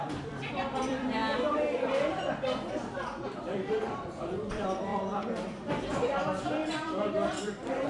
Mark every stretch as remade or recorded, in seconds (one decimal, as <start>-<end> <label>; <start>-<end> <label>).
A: 0.0-7.9 remade